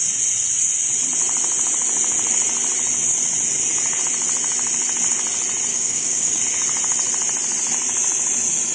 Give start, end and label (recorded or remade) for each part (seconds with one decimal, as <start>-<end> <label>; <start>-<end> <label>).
0.0-5.7 recorded; 5.7-6.4 remade; 6.4-8.7 recorded